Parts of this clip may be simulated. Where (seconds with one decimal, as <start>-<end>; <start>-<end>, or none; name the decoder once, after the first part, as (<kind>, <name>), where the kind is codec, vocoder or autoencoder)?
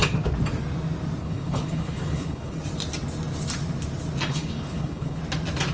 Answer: 1.2-2.6 (codec, HILCodec); 4.3-5.2